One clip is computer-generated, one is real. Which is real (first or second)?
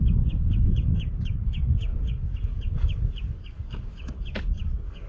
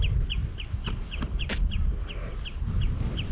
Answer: second